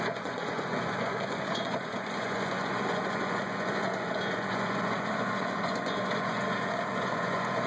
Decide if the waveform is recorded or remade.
remade